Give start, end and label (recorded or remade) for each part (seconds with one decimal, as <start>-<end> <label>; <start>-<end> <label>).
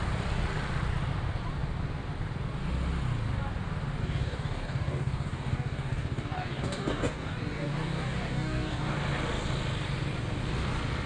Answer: 0.0-4.0 recorded; 4.0-8.9 remade; 8.9-11.1 recorded